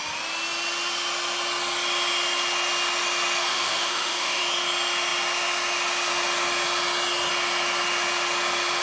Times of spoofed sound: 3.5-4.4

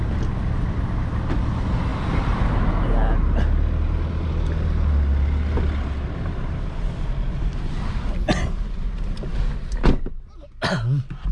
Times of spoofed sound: none

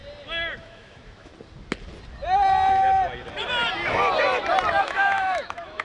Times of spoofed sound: 0.6-1.3; 4.8-5.8

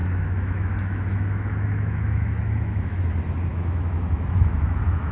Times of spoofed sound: 0.0-3.0; 3.5-5.1

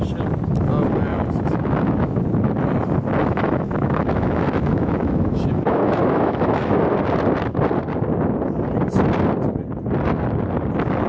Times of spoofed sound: 1.1-2.2; 3.2-6.8